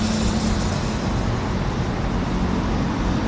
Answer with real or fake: real